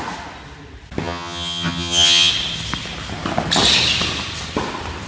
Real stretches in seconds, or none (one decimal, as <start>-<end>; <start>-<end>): 0.0-1.0; 2.3-5.1